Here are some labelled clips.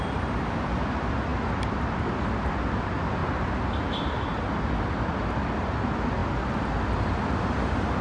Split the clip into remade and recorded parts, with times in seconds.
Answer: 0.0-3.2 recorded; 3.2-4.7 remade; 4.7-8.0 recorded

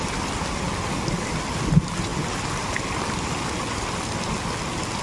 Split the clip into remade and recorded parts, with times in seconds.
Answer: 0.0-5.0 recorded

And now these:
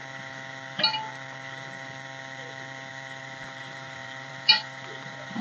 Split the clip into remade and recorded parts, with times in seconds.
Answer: 0.0-3.2 recorded; 3.2-5.4 remade

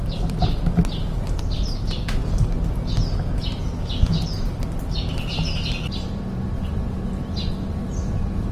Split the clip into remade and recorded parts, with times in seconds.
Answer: 0.0-8.5 recorded